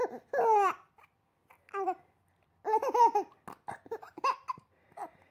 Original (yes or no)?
yes